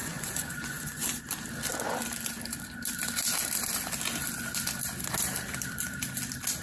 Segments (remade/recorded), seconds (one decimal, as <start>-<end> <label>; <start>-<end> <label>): 0.0-1.2 remade; 1.2-6.6 recorded